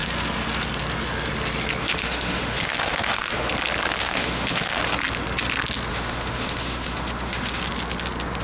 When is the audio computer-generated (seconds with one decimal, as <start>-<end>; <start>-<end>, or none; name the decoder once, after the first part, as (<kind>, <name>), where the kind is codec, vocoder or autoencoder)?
1.8-3.5 (autoencoder, DAC-VAE); 4.0-4.8; 5.9-7.6